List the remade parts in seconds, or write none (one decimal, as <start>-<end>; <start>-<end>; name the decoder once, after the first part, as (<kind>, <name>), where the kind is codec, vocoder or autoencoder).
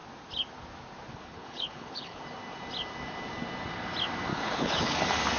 1.1-2.2 (codec, HILCodec); 4.3-5.0